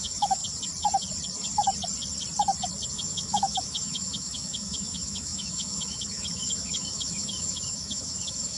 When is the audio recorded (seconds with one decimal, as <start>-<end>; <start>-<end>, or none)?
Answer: 0.4-2.9